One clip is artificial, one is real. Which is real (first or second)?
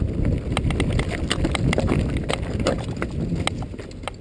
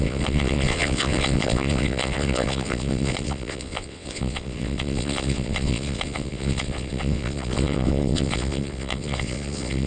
first